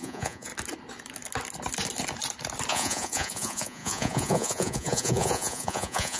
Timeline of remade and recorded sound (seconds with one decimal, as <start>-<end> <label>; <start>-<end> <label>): 0.0-0.5 remade; 0.5-2.7 recorded; 2.7-6.2 remade